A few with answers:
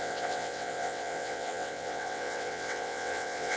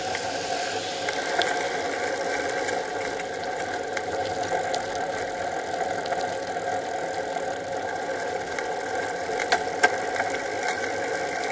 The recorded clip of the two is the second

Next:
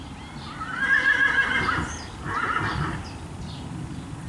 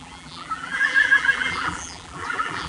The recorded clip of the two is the first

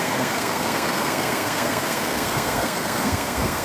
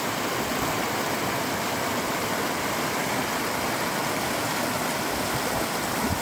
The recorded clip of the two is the second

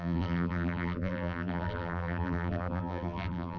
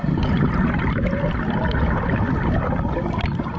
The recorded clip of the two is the second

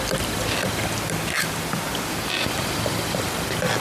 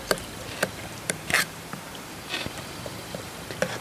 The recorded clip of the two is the first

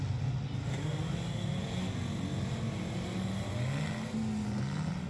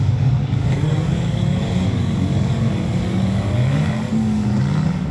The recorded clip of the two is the first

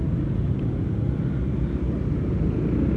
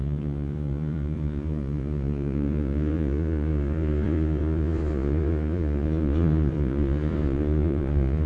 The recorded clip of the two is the first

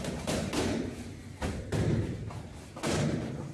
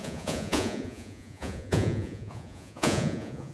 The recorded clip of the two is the first